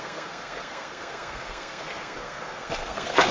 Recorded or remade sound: remade